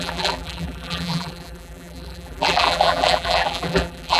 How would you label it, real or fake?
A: fake